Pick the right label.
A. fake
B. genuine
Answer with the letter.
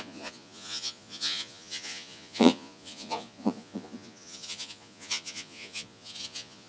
A